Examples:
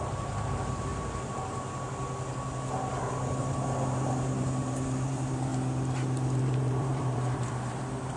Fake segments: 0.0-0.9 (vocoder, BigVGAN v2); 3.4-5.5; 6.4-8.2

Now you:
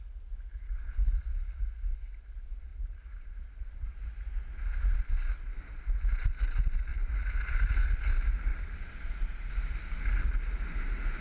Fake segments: 2.7-3.9 (vocoder, BigVGAN v2); 6.9-7.7; 8.5-9.5

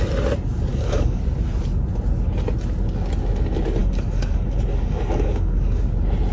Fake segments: 0.7-1.2 (codec, DAC); 3.8-5.8

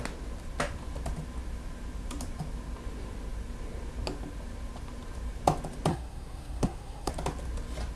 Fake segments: 5.9-7.1 (codec, SNAC)

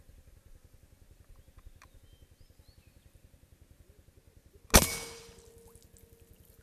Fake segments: none

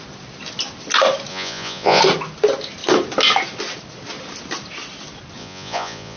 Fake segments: 1.3-2.0 (vocoder, Vocos); 5.4-6.2

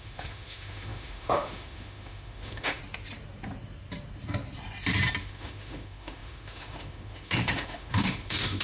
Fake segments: 0.0-2.8 (autoencoder, DAC-VAE); 5.2-8.6

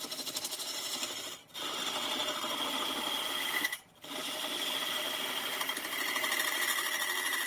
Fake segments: 0.0-7.5 (vocoder, BigVGAN v2)